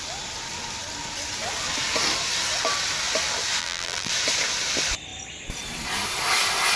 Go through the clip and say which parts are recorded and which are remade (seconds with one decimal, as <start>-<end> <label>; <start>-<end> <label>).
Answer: 0.0-3.6 recorded; 3.6-4.1 remade; 4.1-6.8 recorded